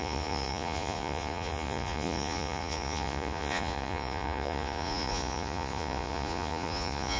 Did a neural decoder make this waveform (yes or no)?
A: yes